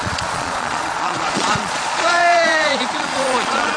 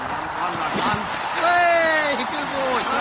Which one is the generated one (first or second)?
first